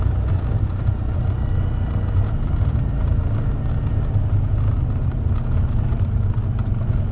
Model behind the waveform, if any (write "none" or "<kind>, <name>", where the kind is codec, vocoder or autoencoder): none